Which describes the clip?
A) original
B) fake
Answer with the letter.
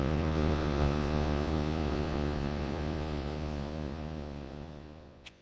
B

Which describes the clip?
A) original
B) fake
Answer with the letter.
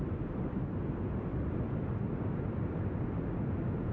A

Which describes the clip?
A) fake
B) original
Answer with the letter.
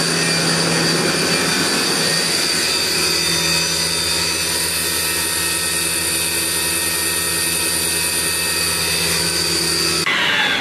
B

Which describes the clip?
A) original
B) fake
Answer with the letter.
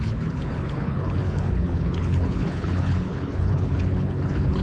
B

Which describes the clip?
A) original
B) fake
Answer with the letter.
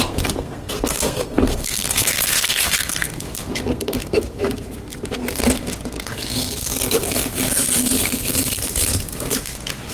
B